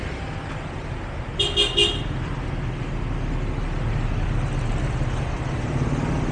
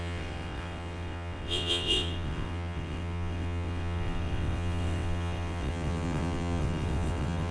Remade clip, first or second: second